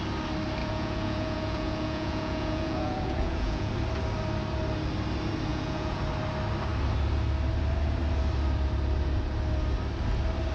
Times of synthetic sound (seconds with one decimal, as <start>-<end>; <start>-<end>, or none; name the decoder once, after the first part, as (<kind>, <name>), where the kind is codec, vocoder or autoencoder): 0.6-3.7 (vocoder, Vocos); 5.5-6.0